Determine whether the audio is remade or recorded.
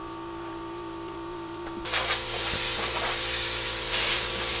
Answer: remade